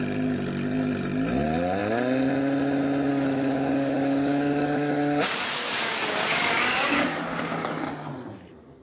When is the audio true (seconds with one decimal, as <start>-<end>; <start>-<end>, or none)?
0.0-3.1; 8.1-8.8